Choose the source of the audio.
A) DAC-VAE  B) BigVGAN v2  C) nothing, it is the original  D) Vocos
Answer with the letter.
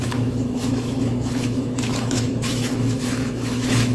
A